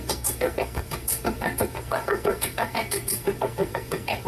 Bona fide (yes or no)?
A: no